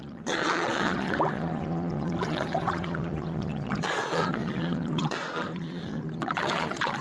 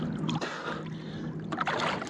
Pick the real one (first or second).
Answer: second